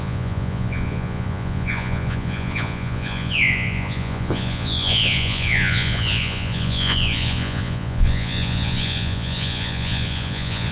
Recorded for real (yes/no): no